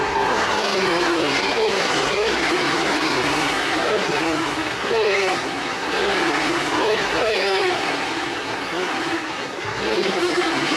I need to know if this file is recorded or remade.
remade